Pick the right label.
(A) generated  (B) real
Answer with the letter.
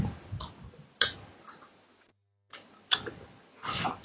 B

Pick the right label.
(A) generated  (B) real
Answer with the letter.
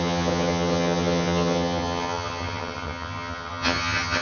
A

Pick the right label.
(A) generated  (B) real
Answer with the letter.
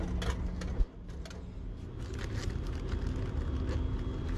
B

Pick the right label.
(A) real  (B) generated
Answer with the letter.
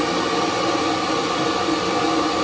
A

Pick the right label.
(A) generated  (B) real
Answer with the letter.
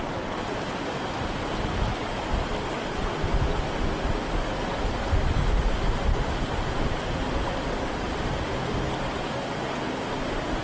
B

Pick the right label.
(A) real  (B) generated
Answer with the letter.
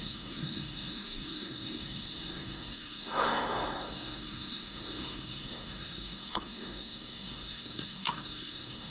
B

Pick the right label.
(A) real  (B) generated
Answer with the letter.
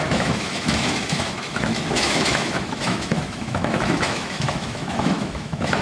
B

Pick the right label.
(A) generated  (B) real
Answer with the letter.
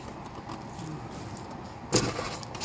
B